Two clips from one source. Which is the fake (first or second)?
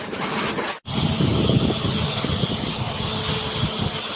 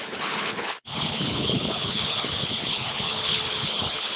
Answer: second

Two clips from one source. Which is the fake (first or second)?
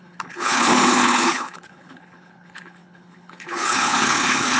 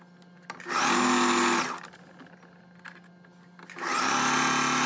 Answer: first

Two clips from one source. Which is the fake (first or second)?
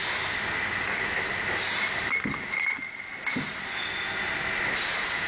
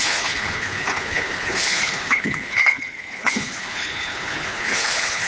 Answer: second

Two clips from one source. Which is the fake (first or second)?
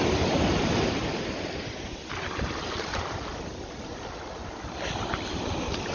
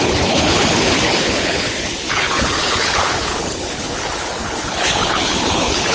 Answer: second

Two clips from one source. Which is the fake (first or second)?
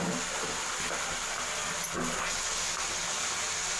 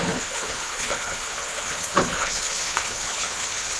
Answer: second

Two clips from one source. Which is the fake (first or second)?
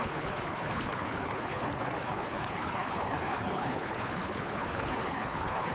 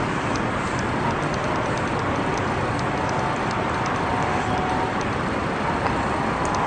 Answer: first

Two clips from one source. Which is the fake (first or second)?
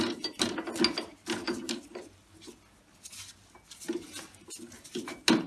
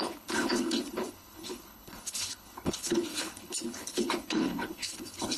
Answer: second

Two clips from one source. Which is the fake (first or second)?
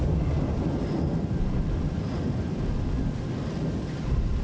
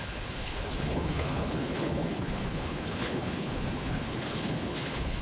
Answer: second